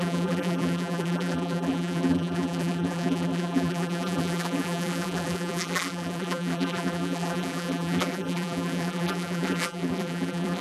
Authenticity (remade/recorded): remade